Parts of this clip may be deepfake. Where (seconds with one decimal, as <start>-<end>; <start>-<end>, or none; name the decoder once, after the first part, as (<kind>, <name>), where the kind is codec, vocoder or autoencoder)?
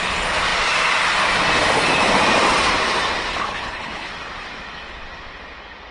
3.3-4.1 (codec, HILCodec)